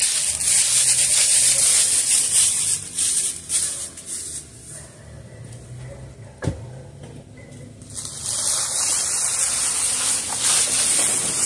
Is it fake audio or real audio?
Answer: real